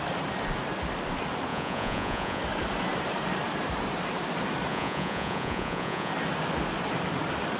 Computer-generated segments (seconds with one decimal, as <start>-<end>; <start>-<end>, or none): 1.5-2.4; 4.7-6.1